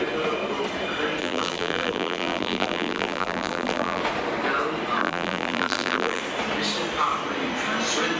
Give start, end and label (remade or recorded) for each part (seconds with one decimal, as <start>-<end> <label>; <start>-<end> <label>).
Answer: 0.0-1.2 recorded; 1.2-4.0 remade; 4.0-5.0 recorded; 5.0-6.2 remade; 6.2-8.2 recorded